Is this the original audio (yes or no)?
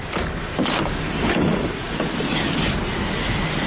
yes